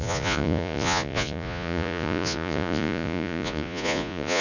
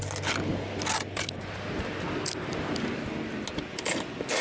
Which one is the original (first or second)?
second